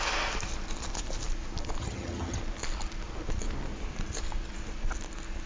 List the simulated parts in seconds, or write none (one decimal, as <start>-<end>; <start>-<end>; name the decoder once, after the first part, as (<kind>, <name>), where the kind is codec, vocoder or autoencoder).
1.8-2.4 (vocoder, HiFi-GAN)